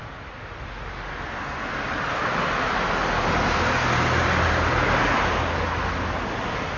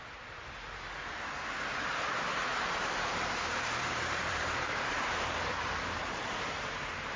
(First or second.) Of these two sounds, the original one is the first